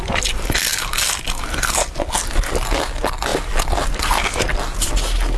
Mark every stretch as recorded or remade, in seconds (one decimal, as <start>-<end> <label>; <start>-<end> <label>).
0.0-5.4 recorded

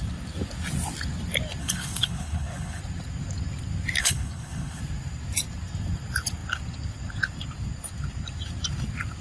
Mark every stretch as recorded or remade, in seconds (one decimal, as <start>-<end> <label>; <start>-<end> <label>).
0.0-1.6 recorded; 1.6-2.8 remade; 2.8-4.0 recorded; 4.0-4.8 remade; 4.8-9.2 recorded

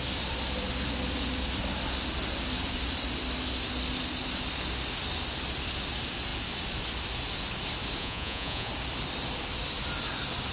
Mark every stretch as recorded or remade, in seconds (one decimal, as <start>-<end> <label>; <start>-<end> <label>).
0.0-8.0 recorded; 8.0-8.7 remade; 8.7-10.5 recorded

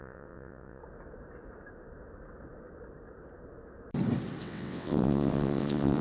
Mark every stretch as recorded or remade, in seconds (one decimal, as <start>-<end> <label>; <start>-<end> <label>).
0.0-0.8 remade; 0.8-4.4 recorded; 4.4-6.0 remade

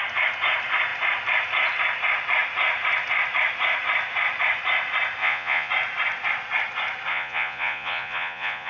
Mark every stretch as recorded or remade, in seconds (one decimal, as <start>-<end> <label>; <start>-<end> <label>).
0.0-5.2 recorded; 5.2-5.7 remade; 5.7-7.1 recorded; 7.1-8.7 remade

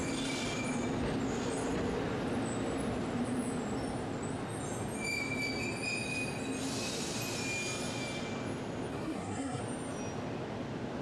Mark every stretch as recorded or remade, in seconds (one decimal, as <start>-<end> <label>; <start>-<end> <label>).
0.0-8.9 recorded; 8.9-9.6 remade; 9.6-11.0 recorded